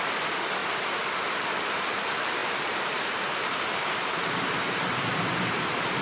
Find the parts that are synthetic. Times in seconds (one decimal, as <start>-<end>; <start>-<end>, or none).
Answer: 2.4-6.0